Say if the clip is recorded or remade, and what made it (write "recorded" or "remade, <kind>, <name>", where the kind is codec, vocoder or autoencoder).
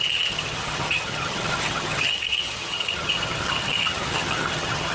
remade, vocoder, HiFi-GAN